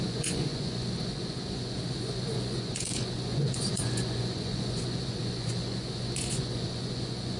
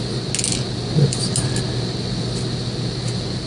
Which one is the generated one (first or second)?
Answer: first